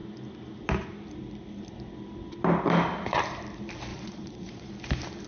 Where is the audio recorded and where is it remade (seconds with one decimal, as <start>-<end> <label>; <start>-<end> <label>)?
0.0-3.9 recorded; 3.9-4.7 remade; 4.7-5.3 recorded